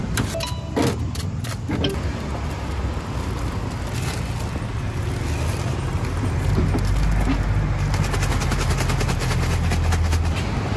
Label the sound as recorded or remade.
recorded